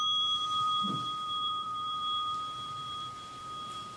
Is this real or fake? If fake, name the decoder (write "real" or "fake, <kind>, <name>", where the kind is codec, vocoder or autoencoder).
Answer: fake, vocoder, BigVGAN v2